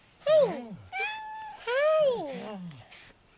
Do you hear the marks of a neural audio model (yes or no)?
no